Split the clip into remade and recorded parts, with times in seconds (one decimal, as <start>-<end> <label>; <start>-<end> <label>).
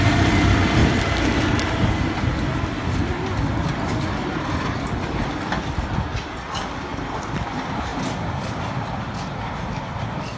0.0-10.4 recorded